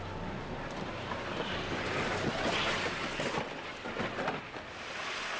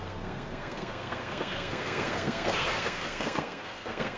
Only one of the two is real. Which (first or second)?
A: first